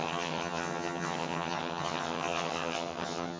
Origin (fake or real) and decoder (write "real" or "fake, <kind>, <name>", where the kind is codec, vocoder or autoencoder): fake, vocoder, HiFi-GAN